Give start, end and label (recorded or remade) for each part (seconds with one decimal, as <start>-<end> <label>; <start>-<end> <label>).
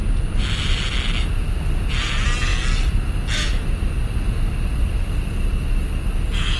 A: 0.0-6.6 recorded